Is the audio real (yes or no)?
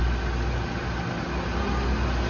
yes